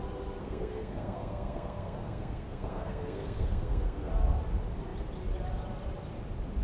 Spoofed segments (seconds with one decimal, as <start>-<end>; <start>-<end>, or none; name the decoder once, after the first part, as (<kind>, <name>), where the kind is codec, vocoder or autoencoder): 0.4-4.1 (codec, SNAC)